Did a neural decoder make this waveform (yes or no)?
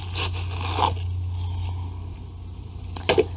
no